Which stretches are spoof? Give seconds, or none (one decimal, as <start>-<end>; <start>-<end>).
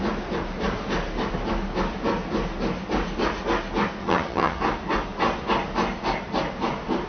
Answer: 4.0-4.6